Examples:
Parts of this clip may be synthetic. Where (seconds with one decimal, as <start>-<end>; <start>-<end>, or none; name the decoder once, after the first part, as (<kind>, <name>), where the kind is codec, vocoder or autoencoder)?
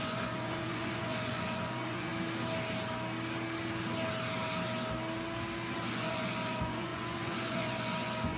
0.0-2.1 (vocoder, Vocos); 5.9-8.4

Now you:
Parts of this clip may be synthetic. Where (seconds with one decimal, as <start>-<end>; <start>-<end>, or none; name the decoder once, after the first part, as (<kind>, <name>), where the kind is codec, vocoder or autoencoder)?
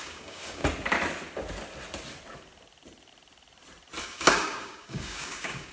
0.0-0.6 (codec, DAC); 4.0-5.7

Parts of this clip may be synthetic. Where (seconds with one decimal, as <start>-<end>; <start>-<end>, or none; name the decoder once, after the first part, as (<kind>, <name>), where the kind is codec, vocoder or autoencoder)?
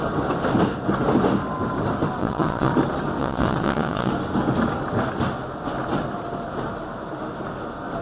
2.2-2.7 (vocoder, WaveNeXt); 3.2-4.1